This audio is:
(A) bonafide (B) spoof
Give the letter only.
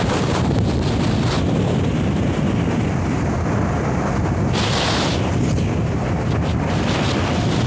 B